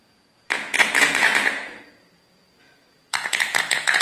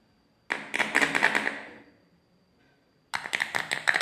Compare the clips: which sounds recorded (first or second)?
second